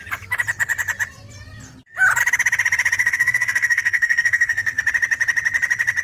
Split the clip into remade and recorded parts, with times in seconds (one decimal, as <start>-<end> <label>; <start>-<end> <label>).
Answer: 0.0-3.0 recorded; 3.0-4.8 remade; 4.8-6.0 recorded